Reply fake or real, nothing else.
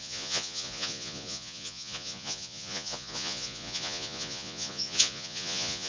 fake